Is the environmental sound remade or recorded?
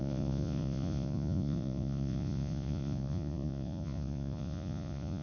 remade